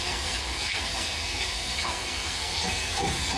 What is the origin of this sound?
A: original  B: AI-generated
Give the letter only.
B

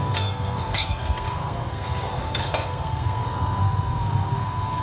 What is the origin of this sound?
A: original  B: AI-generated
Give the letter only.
B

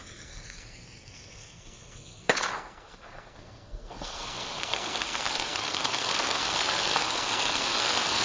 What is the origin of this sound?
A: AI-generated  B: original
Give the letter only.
A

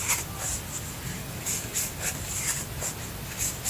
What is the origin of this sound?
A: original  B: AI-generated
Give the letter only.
A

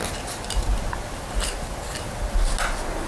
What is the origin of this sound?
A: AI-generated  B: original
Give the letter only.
B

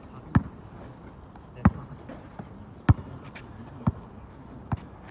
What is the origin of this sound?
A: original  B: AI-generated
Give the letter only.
A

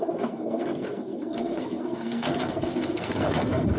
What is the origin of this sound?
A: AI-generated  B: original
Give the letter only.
A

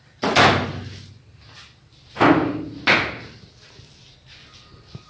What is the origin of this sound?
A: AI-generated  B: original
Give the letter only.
B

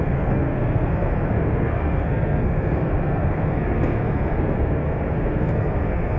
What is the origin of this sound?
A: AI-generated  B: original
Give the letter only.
A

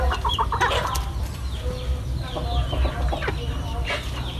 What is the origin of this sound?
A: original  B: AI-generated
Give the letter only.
A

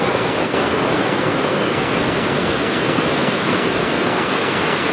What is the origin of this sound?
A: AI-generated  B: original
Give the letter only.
A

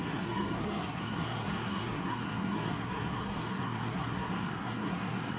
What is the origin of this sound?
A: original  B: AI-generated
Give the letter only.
B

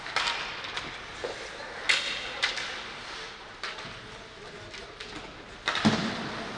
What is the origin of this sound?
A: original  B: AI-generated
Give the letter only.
A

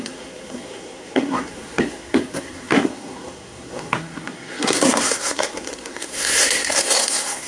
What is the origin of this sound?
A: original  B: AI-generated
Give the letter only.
B